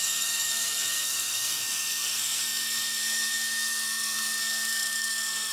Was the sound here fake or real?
fake